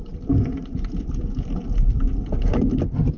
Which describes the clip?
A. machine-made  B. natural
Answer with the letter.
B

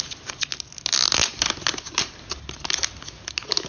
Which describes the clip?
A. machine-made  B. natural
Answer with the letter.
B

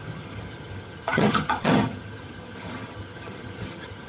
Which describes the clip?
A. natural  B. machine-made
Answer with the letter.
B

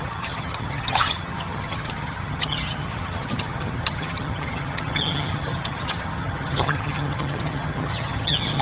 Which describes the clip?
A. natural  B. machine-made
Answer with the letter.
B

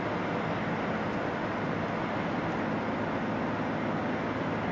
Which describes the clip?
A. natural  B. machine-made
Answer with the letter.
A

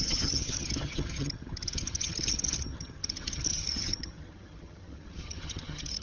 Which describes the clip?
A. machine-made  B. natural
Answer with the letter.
A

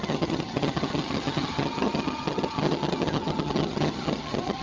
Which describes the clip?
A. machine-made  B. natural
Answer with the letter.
A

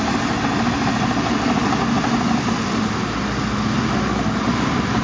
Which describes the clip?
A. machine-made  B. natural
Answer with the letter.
B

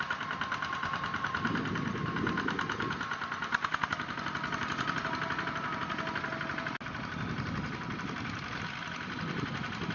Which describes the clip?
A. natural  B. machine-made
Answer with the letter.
A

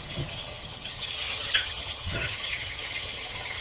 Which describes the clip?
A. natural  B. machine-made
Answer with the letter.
B